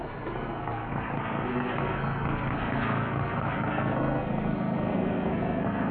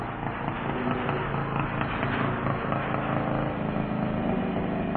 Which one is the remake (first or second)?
first